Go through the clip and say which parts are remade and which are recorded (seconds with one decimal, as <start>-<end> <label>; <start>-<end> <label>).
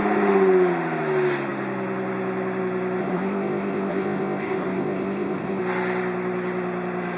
0.0-3.0 recorded; 3.0-5.6 remade; 5.6-7.2 recorded